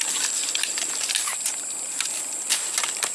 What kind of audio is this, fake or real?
real